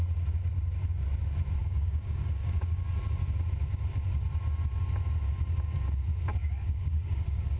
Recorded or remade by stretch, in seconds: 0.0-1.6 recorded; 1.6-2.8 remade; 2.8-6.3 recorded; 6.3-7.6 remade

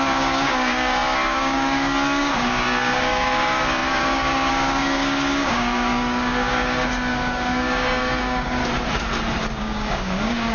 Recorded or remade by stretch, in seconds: 0.0-8.6 remade; 8.6-9.6 recorded; 9.6-10.5 remade

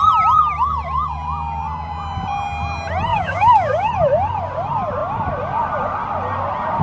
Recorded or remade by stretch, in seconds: 0.0-3.1 recorded; 3.1-3.9 remade; 3.9-6.8 recorded

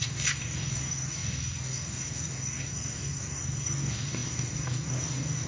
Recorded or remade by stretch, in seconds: 0.0-5.5 remade

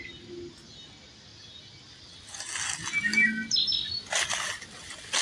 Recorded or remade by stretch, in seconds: 0.0-5.2 recorded

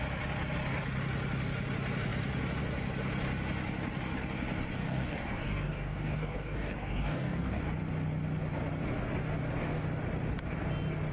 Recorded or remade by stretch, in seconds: 0.0-4.8 recorded; 4.8-7.6 remade; 7.6-11.1 recorded